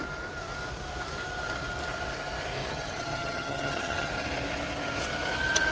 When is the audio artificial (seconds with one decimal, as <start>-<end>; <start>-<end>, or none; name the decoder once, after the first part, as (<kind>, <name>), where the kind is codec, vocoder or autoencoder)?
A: 2.6-4.1 (vocoder, HiFi-GAN)